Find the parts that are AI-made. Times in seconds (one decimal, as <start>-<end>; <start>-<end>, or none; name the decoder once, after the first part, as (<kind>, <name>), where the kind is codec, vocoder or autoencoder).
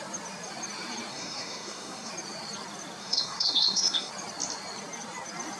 1.1-2.1 (codec, SNAC); 3.0-4.1